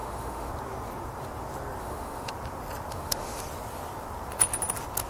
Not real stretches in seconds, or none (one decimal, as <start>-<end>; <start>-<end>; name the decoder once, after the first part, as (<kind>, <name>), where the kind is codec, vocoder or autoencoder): 0.0-0.5 (autoencoder, DAC-VAE); 1.8-2.3; 2.9-3.4